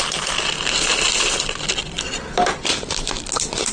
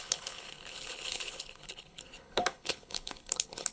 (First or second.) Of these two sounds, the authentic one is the first